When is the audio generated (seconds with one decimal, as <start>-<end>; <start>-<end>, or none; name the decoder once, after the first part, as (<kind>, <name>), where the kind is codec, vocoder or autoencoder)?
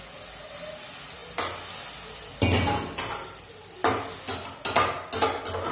none